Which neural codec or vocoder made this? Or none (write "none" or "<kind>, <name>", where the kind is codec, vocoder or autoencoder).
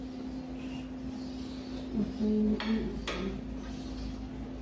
none